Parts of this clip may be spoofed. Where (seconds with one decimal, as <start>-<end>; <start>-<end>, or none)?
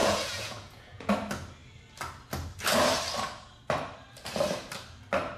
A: 0.0-1.1